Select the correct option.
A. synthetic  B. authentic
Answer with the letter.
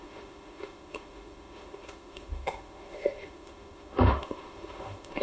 A